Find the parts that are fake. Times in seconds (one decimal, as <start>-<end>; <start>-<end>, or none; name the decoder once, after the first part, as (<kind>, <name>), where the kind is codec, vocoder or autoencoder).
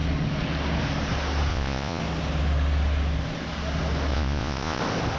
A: 1.5-2.0 (vocoder, Vocos); 4.1-4.8